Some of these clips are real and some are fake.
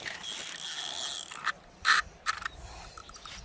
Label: real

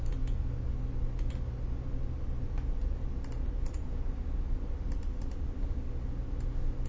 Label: real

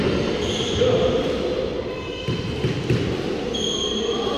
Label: real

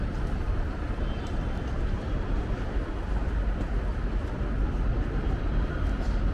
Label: fake